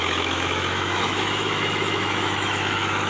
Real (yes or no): no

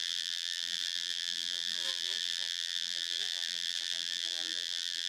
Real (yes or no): no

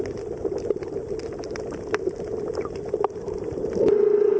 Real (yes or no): yes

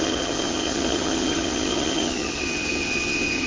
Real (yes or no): no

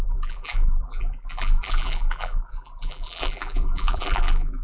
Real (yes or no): no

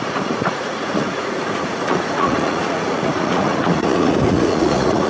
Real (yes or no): no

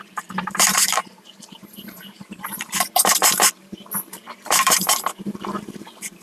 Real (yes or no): no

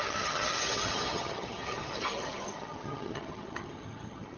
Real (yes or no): no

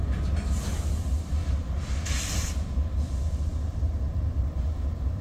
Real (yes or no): yes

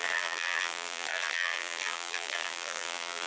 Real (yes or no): no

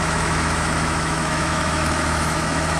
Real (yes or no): no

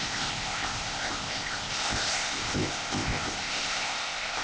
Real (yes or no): no